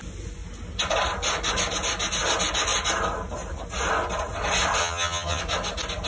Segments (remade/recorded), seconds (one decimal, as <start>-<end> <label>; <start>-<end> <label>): 0.0-4.8 recorded; 4.8-5.4 remade; 5.4-6.1 recorded